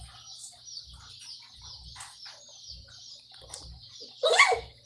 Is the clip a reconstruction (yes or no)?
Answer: no